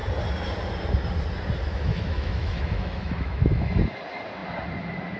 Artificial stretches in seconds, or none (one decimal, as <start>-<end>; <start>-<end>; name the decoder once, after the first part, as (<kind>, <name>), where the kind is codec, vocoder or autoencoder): 1.7-4.0 (autoencoder, DAC-VAE)